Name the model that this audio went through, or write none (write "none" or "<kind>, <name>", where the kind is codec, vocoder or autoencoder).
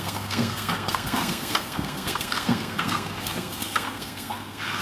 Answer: codec, SNAC